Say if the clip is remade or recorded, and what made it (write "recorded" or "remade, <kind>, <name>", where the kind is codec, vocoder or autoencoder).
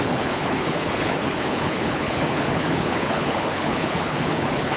remade, codec, HILCodec